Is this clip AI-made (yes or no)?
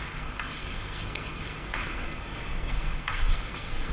yes